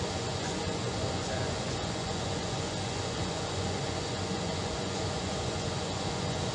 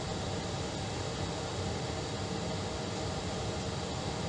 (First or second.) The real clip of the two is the second